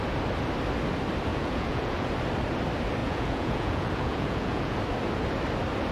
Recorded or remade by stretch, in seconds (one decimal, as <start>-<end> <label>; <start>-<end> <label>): 0.0-1.3 recorded; 1.3-2.1 remade; 2.1-3.0 recorded; 3.0-4.8 remade; 4.8-5.9 recorded